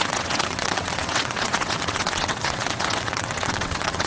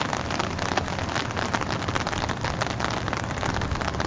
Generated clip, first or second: first